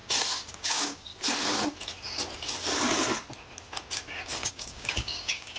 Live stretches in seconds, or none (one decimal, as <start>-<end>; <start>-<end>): 0.0-0.5; 1.1-4.5